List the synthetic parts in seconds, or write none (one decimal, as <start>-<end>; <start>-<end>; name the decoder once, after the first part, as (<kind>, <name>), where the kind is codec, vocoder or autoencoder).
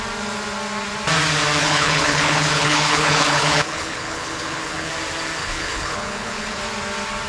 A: 1.6-4.9 (codec, HILCodec); 5.4-6.6